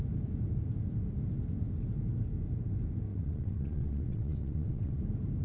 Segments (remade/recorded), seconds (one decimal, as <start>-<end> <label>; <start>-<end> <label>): 0.0-3.1 recorded; 3.1-5.0 remade; 5.0-5.4 recorded